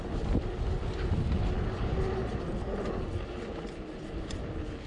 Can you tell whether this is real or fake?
real